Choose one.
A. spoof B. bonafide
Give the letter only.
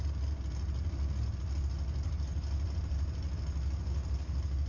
B